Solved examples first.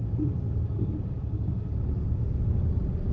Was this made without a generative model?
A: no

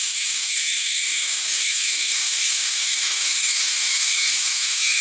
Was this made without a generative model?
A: no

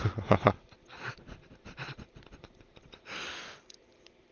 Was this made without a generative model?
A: yes